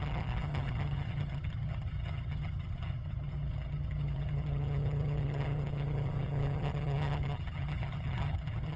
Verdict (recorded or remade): remade